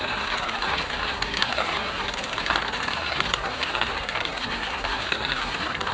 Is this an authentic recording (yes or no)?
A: no